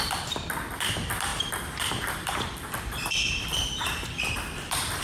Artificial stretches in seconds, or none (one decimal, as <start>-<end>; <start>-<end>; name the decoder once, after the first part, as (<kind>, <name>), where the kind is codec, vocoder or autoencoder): 0.0-5.0 (vocoder, BigVGAN v2)